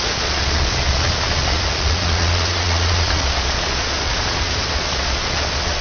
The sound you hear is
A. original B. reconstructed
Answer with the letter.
B